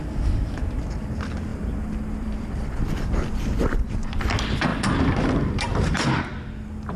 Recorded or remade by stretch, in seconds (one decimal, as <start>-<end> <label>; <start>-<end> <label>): 0.0-1.5 recorded; 1.5-2.9 remade; 2.9-4.7 recorded; 4.7-6.2 remade; 6.2-7.0 recorded